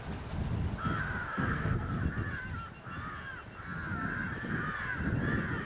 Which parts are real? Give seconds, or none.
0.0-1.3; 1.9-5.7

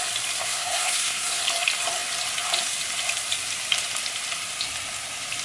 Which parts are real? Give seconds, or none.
0.0-0.4; 1.4-5.4

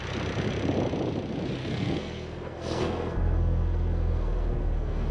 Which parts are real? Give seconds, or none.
0.0-1.6